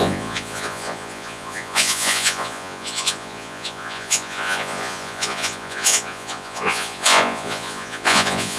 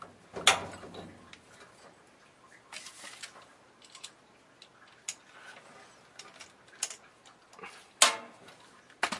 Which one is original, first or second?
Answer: second